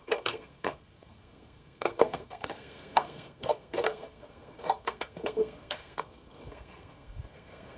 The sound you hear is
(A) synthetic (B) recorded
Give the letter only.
A